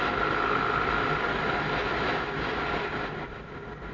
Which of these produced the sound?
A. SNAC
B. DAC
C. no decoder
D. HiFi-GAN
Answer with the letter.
C